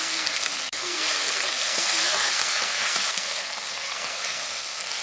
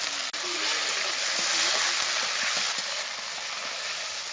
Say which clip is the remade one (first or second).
first